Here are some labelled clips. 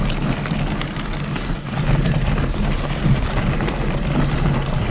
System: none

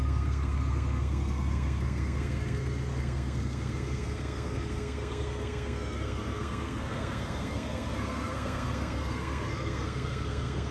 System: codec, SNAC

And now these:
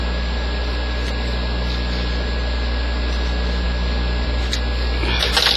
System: none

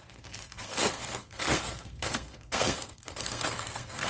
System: codec, SNAC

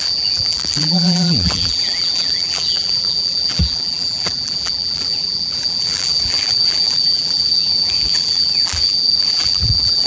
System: vocoder, BigVGAN v2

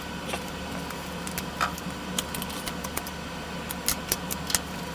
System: none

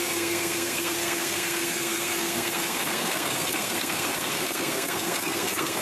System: codec, SNAC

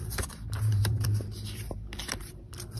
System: vocoder, BigVGAN v2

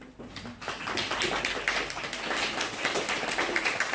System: none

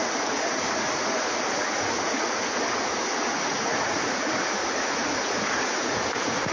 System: vocoder, Vocos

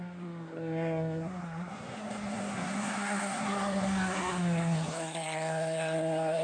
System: codec, SNAC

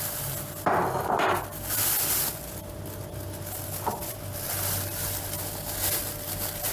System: none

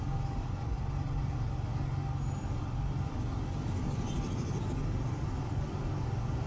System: none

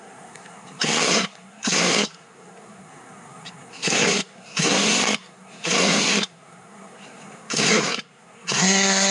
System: codec, SNAC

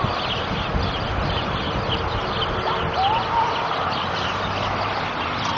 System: none